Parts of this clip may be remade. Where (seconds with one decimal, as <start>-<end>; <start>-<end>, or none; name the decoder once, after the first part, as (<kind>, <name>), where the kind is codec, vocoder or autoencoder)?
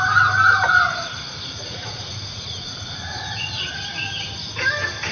1.7-3.2 (vocoder, Vocos)